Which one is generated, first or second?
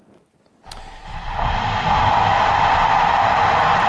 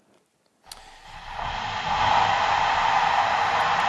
first